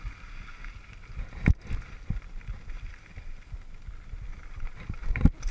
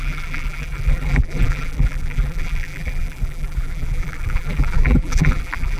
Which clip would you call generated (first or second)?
second